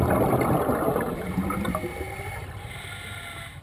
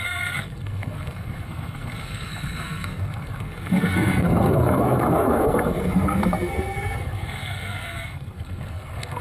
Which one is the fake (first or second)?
second